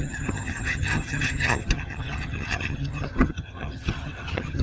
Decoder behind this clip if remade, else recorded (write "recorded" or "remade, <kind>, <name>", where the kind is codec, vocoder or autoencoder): remade, vocoder, HiFi-GAN